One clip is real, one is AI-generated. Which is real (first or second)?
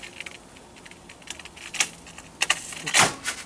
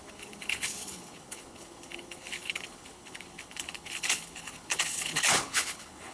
first